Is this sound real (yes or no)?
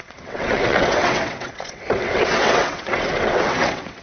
no